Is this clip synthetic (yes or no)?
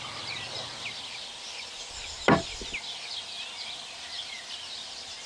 no